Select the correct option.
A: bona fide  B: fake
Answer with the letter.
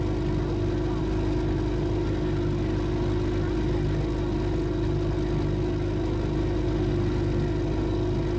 A